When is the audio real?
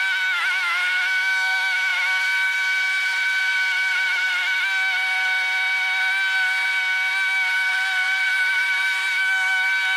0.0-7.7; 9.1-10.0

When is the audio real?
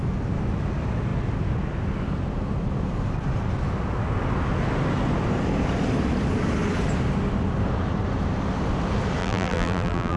0.0-9.2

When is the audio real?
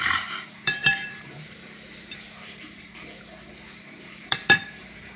none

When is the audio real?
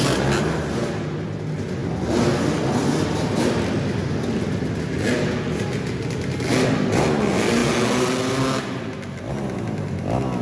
0.0-10.4